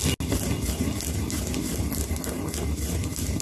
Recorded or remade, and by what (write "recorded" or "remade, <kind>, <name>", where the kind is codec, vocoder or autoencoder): recorded